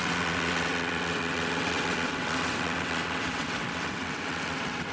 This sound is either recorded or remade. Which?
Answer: remade